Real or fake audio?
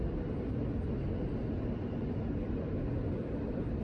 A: fake